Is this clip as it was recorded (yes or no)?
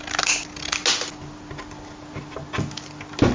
yes